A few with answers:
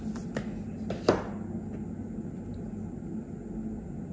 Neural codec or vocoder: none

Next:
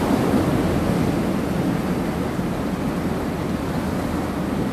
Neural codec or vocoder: none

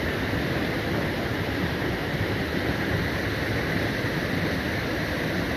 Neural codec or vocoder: none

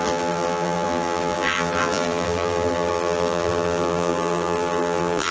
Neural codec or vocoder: vocoder, BigVGAN v2